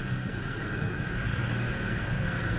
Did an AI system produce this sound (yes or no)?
yes